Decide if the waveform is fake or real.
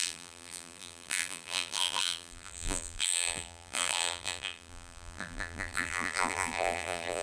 fake